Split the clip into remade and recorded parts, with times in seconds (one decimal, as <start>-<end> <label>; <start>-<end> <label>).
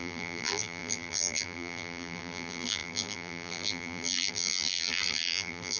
0.0-5.8 remade